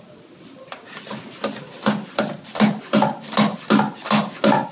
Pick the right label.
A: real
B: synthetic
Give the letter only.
A